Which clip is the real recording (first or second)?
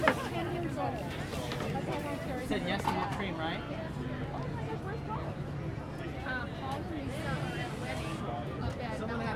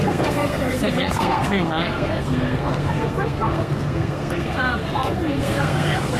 first